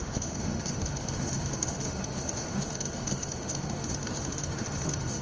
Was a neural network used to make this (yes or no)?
yes